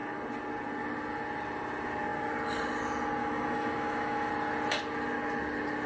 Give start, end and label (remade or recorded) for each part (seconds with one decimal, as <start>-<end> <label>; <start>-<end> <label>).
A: 0.0-3.2 recorded; 3.2-4.3 remade; 4.3-5.9 recorded